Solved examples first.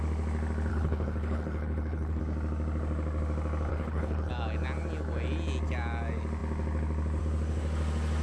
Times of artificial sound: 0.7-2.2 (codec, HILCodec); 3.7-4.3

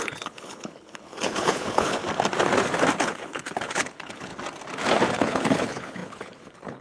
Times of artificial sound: 0.0-2.0 (codec, HILCodec); 3.0-4.3; 5.1-6.8

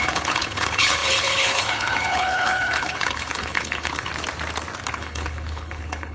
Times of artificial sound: 0.0-4.1 (codec, HILCodec); 4.9-6.1

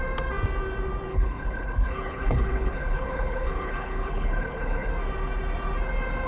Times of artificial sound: 1.1-4.9 (codec, HILCodec)